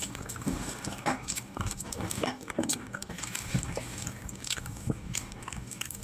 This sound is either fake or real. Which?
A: fake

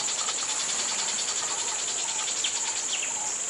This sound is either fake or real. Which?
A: real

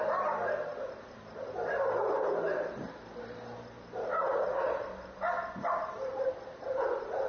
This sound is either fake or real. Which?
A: real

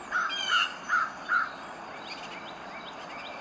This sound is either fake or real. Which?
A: real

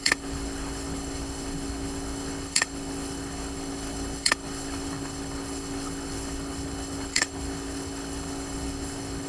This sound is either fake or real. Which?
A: fake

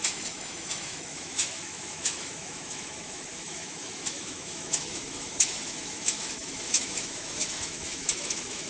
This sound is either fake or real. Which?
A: fake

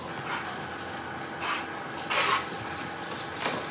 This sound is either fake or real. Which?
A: real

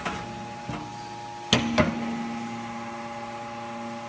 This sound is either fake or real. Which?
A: real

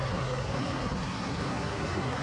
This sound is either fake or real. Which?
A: fake